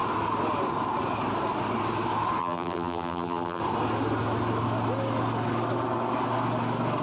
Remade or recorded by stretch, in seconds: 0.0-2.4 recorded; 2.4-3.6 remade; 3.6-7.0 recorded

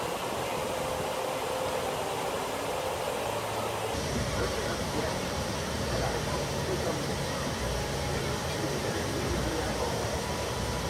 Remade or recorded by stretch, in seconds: 0.0-4.3 recorded; 4.3-7.1 remade; 7.1-8.8 recorded; 8.8-10.2 remade; 10.2-10.9 recorded

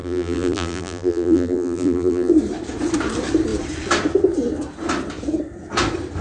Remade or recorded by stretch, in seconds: 0.0-2.3 remade; 2.3-6.2 recorded

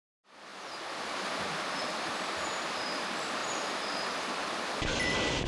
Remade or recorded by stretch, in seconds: 0.0-0.5 remade; 0.5-2.9 recorded; 2.9-5.5 remade

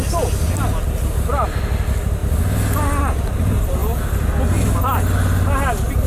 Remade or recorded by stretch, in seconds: 0.0-6.1 recorded